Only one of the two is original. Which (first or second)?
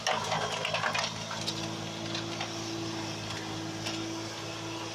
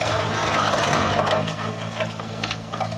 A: first